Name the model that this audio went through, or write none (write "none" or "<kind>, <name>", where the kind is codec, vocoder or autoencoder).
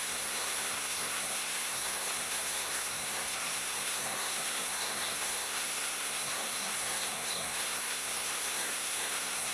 codec, SNAC